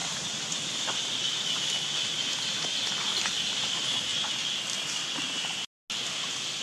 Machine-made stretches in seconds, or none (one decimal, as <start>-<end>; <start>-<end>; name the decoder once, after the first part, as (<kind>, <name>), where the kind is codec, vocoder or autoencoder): 0.0-0.6 (vocoder, BigVGAN v2)